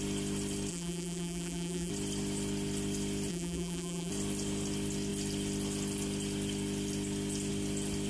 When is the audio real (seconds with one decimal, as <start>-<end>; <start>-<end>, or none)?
0.0-0.7; 1.9-3.3; 4.1-8.1